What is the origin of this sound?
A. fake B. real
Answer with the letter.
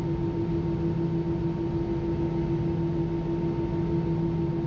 B